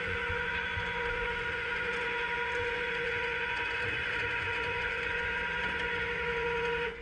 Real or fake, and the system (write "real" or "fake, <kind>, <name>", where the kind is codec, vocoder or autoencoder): fake, vocoder, Vocos